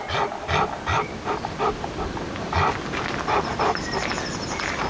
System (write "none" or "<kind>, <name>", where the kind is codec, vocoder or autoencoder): none